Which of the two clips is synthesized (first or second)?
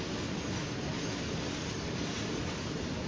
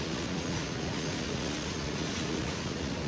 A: second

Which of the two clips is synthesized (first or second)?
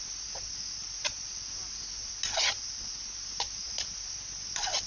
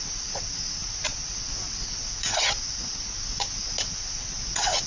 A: second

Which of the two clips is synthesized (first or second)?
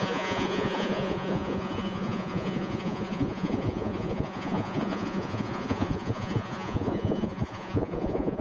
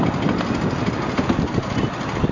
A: first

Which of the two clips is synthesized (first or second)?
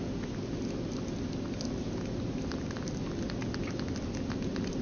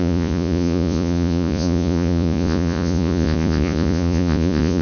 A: second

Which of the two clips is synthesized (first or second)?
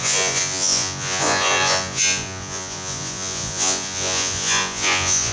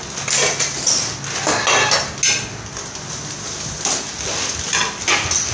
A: first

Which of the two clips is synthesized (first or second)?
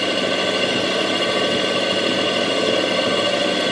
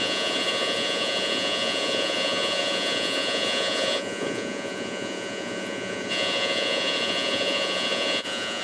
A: second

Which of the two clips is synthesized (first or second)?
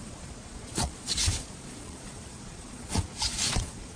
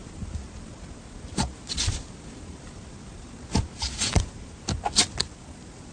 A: first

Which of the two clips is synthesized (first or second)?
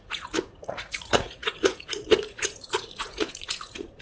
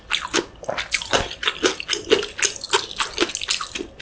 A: first